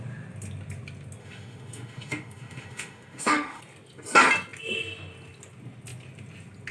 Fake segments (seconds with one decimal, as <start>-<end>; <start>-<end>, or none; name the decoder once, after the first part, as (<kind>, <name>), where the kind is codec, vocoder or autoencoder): 1.2-3.6 (autoencoder, DAC-VAE)